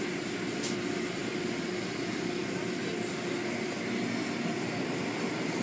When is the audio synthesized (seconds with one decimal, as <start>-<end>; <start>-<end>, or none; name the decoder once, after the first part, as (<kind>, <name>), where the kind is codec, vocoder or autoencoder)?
1.2-2.4 (vocoder, BigVGAN v2); 2.8-3.9